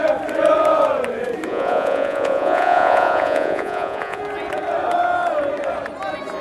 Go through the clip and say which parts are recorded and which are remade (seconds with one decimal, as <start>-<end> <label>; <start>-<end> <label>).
0.0-1.5 recorded; 1.5-4.2 remade; 4.2-6.4 recorded